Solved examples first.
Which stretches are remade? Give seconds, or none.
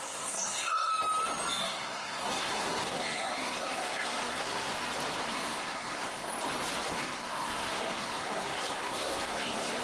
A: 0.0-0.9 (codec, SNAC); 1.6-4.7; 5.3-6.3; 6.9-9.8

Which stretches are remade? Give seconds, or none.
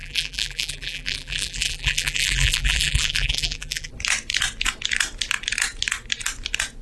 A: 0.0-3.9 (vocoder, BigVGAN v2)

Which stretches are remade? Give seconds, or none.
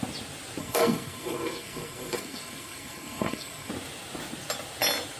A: 0.6-3.7 (codec, SNAC)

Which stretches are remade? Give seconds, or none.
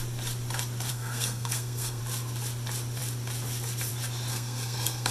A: 0.9-2.0 (codec, SNAC); 4.3-5.1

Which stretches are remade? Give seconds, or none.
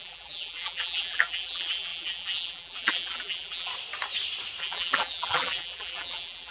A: 0.0-3.7 (vocoder, BigVGAN v2); 4.6-6.5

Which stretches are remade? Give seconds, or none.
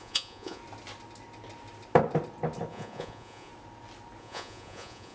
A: 0.0-0.6 (vocoder, Vocos); 2.7-3.5; 4.2-5.1